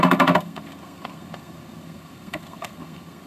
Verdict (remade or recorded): remade